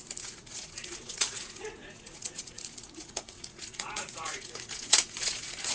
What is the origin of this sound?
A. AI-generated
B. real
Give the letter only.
A